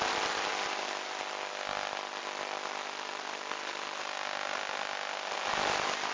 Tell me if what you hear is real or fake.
real